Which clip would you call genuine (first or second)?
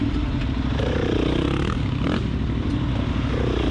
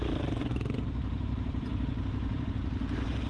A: first